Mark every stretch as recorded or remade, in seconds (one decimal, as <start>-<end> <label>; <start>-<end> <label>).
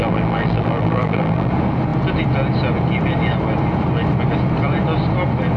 0.0-1.5 remade; 1.5-5.6 recorded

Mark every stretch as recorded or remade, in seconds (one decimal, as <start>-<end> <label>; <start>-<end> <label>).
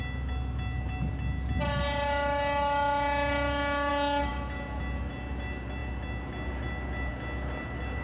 0.0-8.0 recorded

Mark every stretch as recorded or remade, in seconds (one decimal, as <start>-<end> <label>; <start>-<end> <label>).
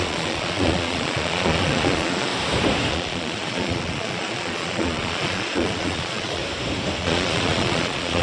0.0-2.3 remade; 2.3-2.9 recorded; 2.9-6.4 remade; 6.4-7.0 recorded; 7.0-8.2 remade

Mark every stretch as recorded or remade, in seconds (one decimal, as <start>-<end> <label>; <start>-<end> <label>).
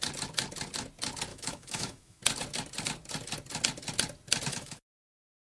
0.0-1.3 recorded; 1.3-2.2 remade; 2.2-4.5 recorded; 4.5-5.5 remade